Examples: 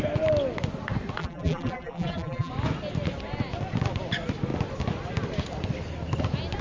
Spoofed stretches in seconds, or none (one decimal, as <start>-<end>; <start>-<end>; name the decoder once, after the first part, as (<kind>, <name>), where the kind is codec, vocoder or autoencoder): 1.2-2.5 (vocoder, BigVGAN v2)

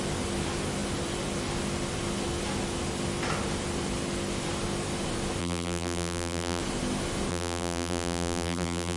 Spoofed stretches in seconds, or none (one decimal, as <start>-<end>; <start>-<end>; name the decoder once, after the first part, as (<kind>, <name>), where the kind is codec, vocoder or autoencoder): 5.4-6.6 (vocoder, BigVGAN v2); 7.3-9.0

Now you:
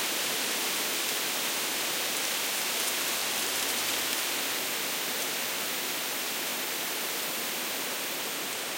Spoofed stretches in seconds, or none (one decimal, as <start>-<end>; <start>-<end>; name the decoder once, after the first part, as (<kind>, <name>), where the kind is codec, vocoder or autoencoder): none